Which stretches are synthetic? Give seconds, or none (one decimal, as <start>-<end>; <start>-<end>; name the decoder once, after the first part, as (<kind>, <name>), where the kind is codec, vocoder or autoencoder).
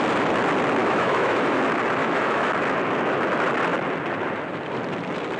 0.8-1.6 (autoencoder, DAC-VAE); 2.0-2.5